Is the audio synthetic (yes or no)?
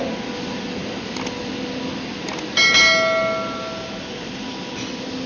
no